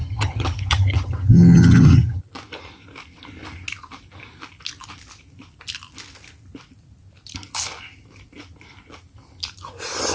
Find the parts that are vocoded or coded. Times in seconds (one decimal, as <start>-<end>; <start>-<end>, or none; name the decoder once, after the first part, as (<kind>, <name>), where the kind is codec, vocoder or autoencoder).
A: 0.0-2.2 (vocoder, HiFi-GAN)